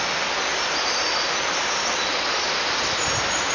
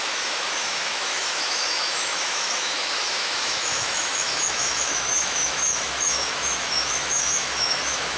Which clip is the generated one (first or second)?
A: second